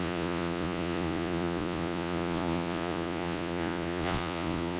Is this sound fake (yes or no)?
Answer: yes